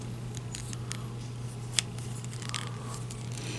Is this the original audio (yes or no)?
yes